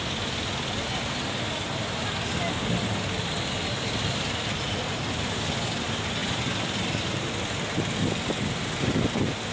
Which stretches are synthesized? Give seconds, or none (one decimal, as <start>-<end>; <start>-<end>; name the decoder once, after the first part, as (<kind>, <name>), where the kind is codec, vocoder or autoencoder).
none